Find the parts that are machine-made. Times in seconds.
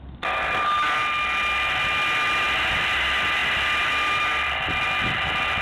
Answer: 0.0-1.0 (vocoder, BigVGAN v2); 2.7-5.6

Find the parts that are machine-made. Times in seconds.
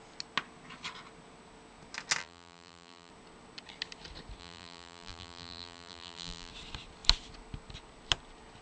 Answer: 2.2-3.1 (vocoder, BigVGAN v2); 4.4-6.5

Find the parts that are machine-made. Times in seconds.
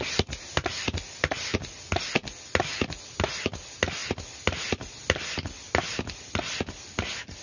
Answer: none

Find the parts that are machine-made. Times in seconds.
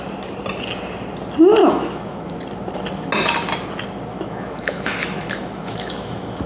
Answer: 1.6-2.3 (autoencoder, DAC-VAE); 4.1-6.5